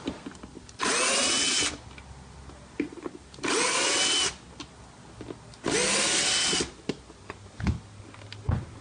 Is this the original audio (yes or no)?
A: yes